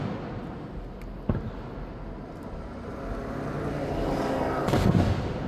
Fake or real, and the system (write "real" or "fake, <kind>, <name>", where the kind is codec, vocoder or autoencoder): real